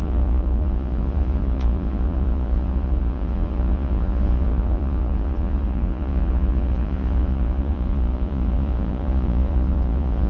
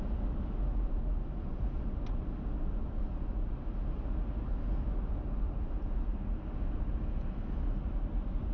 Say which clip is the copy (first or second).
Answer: first